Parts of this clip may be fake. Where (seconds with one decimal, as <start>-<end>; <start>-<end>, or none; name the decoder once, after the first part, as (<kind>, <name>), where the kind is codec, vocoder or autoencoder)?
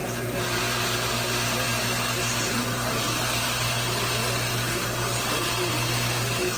none